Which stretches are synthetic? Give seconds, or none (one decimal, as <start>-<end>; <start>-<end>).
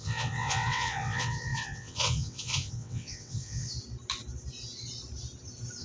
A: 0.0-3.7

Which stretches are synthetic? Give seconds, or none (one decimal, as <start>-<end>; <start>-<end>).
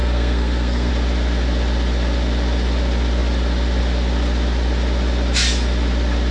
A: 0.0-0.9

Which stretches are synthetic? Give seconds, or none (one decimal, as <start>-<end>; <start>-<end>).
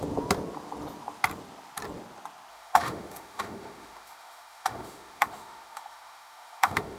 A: 2.5-7.0